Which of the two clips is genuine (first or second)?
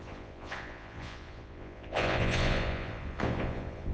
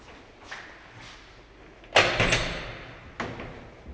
second